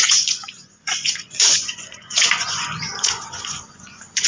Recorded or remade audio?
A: remade